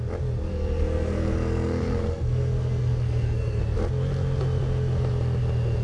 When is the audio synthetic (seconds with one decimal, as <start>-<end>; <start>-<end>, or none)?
0.5-3.6